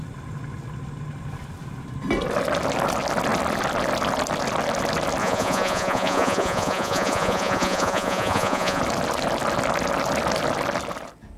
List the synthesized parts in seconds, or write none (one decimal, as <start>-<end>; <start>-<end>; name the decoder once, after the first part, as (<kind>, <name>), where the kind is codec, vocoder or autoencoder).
5.2-8.8 (vocoder, Vocos)